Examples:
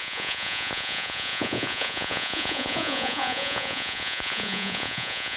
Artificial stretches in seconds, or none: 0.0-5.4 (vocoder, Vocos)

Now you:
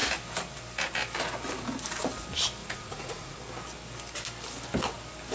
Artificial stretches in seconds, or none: 2.6-3.4 (vocoder, Vocos)

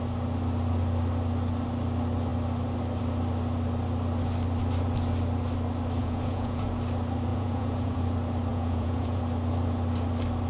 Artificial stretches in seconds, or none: 6.0-6.7 (vocoder, Vocos); 7.3-8.0; 8.5-9.2